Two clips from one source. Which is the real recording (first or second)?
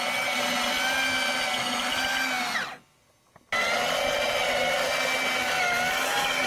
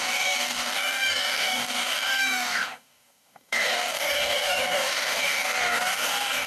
first